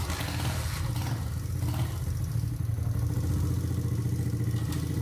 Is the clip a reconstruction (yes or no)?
no